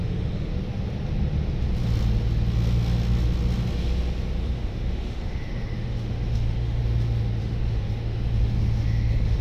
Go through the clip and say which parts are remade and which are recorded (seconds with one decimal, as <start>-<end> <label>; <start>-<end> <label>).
0.0-0.5 remade; 0.5-4.4 recorded; 4.4-6.8 remade; 6.8-7.4 recorded; 7.4-9.4 remade